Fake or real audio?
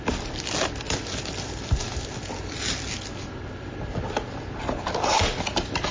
real